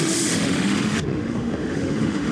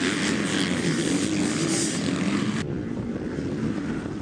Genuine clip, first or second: second